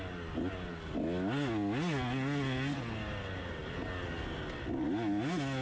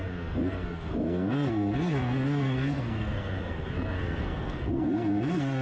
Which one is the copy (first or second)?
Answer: second